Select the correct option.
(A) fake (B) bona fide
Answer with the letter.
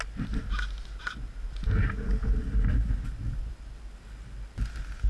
B